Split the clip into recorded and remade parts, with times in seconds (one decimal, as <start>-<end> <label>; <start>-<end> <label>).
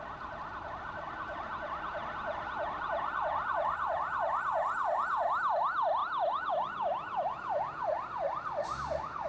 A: 0.0-9.3 recorded